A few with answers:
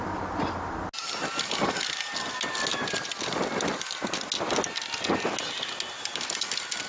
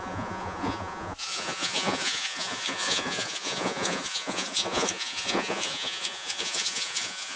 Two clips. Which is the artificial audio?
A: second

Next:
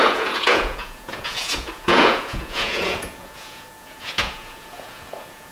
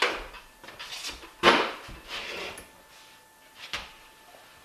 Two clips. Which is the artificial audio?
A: first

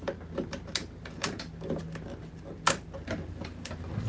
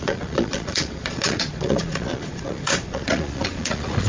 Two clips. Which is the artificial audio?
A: second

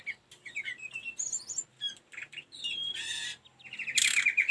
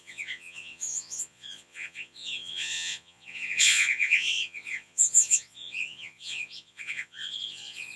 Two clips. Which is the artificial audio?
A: second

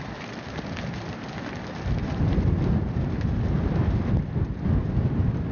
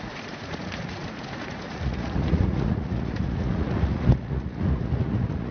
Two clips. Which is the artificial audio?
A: second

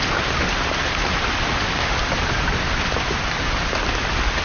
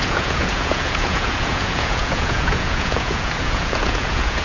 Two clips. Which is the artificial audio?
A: second